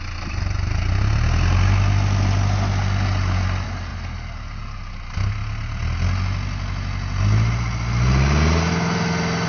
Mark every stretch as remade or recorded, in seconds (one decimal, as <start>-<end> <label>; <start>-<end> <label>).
0.0-9.5 recorded

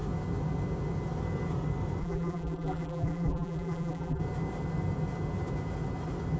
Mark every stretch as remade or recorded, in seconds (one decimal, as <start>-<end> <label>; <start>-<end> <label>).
0.0-2.0 recorded; 2.0-4.2 remade; 4.2-6.4 recorded

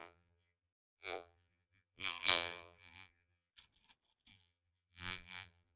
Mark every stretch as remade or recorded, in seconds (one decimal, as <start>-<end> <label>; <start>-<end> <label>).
0.0-3.5 remade; 3.5-4.3 recorded; 4.3-5.8 remade

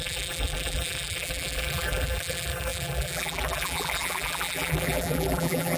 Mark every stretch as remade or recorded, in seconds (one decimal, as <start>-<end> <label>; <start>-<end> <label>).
0.0-5.8 remade

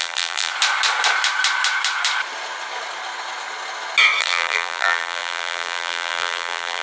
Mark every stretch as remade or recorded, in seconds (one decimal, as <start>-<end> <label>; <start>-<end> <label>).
0.0-0.5 remade; 0.5-4.2 recorded; 4.2-6.8 remade

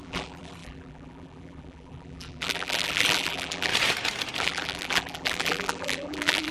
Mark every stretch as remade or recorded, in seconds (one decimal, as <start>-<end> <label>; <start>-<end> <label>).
0.0-3.7 remade; 3.7-4.4 recorded; 4.4-6.5 remade

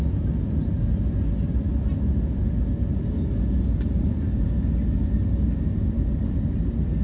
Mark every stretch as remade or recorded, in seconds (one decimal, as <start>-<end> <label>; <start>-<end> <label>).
0.0-2.4 recorded; 2.4-4.2 remade; 4.2-7.0 recorded